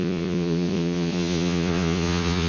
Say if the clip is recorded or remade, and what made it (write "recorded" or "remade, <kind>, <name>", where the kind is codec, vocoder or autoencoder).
remade, vocoder, Vocos